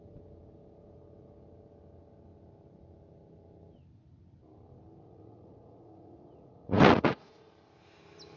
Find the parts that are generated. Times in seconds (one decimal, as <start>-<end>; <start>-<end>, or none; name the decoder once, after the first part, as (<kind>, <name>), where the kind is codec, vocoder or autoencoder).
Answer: 5.0-7.5 (vocoder, Vocos)